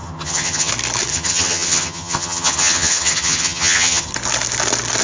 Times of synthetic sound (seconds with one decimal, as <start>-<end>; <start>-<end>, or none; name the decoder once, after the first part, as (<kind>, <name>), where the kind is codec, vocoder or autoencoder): 0.0-0.7 (vocoder, HiFi-GAN); 1.1-4.1